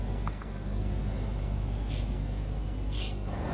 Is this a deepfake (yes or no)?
yes